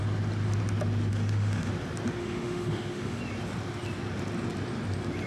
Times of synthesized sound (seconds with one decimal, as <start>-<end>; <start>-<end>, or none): 1.1-1.7; 2.2-3.2